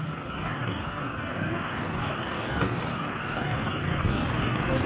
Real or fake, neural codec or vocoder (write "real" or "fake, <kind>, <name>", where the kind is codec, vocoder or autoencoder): fake, codec, DAC